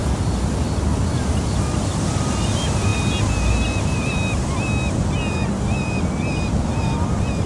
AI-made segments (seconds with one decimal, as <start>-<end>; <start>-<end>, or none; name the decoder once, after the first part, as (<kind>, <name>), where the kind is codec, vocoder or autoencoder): none